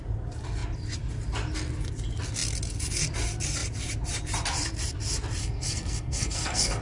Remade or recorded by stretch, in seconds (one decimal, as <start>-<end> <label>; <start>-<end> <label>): 0.0-5.4 recorded; 5.4-6.8 remade